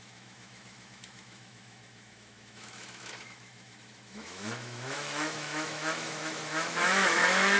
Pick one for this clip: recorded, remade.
remade